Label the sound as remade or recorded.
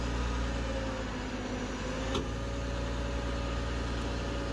recorded